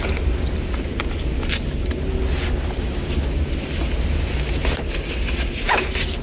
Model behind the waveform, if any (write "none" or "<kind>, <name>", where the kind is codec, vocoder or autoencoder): none